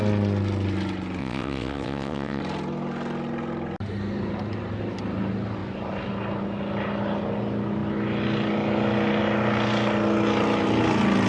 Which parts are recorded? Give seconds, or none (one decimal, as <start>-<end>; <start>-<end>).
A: 0.0-1.2; 2.4-11.3